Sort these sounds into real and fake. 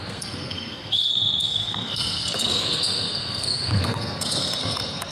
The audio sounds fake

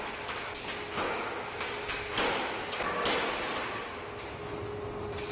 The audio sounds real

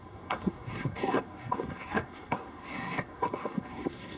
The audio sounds fake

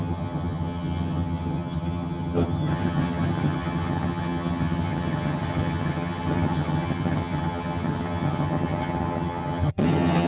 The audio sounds fake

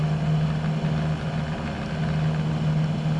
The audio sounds real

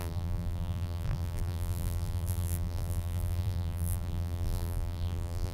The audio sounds fake